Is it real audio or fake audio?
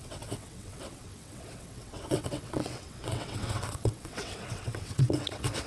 fake